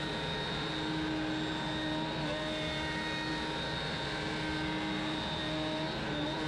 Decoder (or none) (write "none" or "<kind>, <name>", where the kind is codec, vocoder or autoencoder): none